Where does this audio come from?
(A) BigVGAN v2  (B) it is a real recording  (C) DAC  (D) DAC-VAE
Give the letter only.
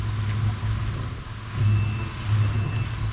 B